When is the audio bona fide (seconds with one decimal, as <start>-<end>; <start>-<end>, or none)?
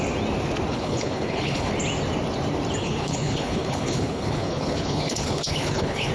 0.0-0.7; 1.7-2.8